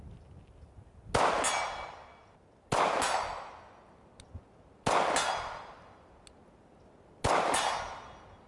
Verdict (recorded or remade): recorded